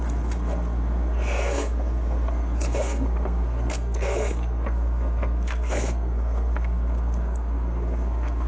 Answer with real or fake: fake